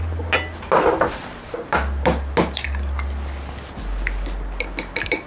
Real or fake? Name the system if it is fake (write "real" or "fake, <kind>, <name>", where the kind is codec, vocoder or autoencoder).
real